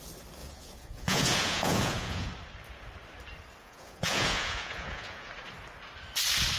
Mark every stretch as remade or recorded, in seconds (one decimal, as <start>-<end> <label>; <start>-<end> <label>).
0.0-0.4 recorded; 0.4-2.3 remade; 2.3-3.6 recorded; 3.6-5.3 remade; 5.3-6.6 recorded